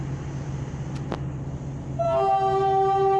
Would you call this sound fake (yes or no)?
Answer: no